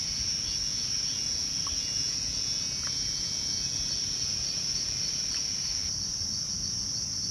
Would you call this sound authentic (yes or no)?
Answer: yes